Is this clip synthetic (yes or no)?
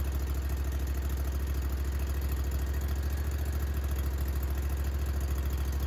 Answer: no